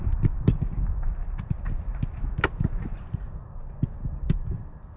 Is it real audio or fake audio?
real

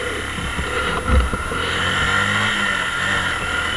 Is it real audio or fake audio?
real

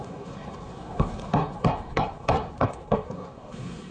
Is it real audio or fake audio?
fake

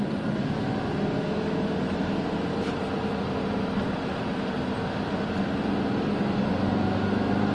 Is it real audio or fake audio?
real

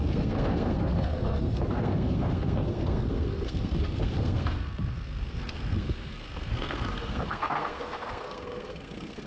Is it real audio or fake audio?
fake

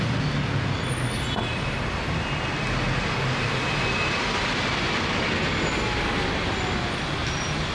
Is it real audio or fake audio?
real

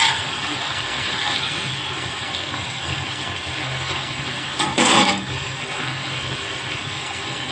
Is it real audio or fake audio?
fake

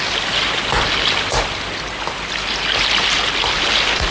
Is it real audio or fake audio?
real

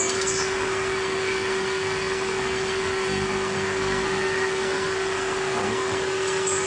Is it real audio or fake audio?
fake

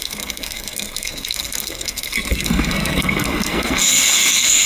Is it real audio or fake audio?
fake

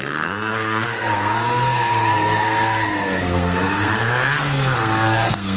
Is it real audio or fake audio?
fake